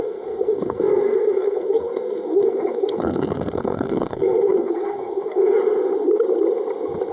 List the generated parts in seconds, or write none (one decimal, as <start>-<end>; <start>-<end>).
0.0-5.6